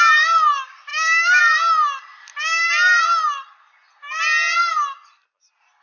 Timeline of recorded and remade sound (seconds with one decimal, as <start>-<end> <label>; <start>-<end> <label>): 0.0-0.9 recorded; 0.9-1.4 remade; 1.4-5.8 recorded